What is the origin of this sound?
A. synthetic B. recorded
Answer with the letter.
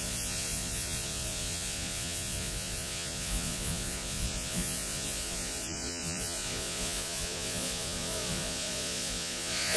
A